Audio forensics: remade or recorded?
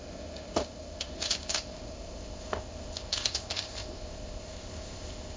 remade